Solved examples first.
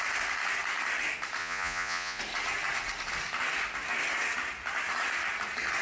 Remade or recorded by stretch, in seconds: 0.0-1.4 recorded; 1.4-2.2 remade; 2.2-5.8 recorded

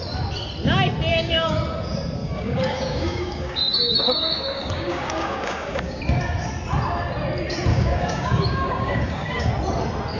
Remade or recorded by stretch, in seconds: 0.0-1.1 recorded; 1.1-1.6 remade; 1.6-2.2 recorded; 2.2-6.0 remade; 6.0-7.7 recorded; 7.7-9.5 remade; 9.5-10.2 recorded

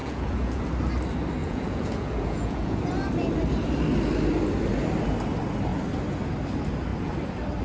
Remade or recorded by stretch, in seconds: 0.0-0.6 remade; 0.6-1.4 recorded; 1.4-2.8 remade; 2.8-7.6 recorded

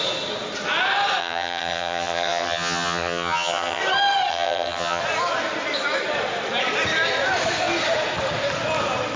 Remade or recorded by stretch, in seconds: 0.0-1.2 recorded; 1.2-3.8 remade; 3.8-4.3 recorded; 4.3-5.0 remade; 5.0-9.2 recorded

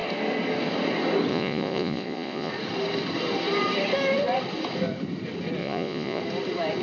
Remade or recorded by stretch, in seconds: 0.0-1.3 recorded; 1.3-2.5 remade; 2.5-5.6 recorded; 5.6-6.2 remade; 6.2-6.8 recorded

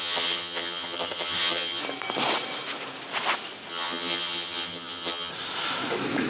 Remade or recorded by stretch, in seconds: 0.0-1.8 remade; 1.8-3.7 recorded; 3.7-5.3 remade; 5.3-6.3 recorded

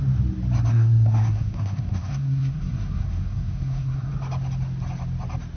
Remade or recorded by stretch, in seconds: 0.0-0.7 recorded; 0.7-4.1 remade; 4.1-5.6 recorded